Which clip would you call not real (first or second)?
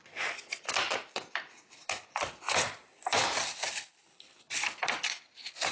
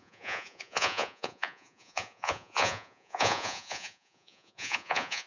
second